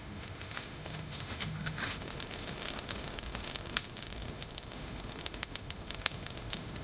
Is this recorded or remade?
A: remade